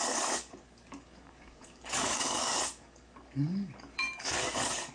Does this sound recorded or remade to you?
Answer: remade